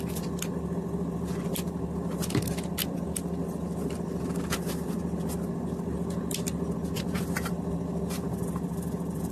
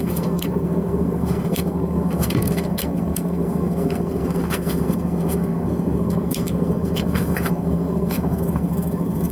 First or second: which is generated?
second